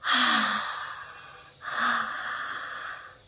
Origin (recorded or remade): recorded